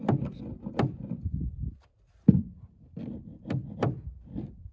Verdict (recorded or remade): recorded